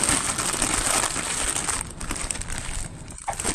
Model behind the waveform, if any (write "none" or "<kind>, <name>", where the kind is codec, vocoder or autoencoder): vocoder, BigVGAN v2